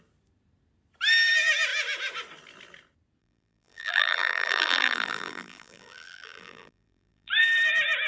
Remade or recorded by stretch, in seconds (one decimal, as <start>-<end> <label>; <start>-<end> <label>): 0.0-3.2 recorded; 3.2-7.3 remade; 7.3-8.1 recorded